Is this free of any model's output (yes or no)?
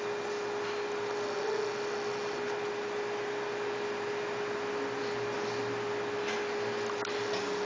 yes